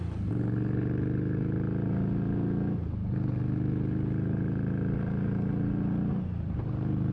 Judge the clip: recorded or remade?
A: recorded